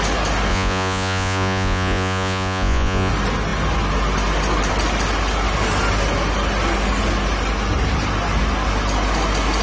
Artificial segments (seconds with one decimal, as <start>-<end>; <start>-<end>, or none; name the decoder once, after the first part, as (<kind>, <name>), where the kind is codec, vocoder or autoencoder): 0.5-3.1 (vocoder, Vocos)